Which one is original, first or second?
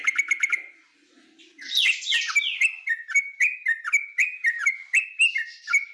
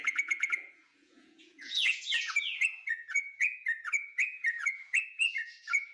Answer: first